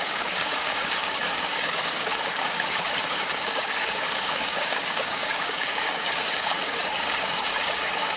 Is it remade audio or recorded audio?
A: remade